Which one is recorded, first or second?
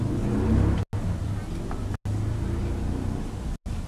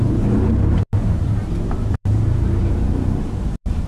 first